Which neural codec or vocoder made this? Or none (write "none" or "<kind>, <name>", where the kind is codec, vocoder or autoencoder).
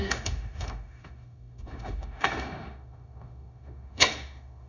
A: autoencoder, DAC-VAE